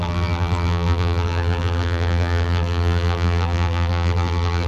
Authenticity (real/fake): fake